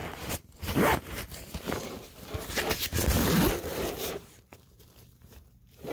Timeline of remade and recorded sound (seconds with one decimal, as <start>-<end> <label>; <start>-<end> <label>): 0.0-1.8 remade; 1.8-3.7 recorded; 3.7-5.9 remade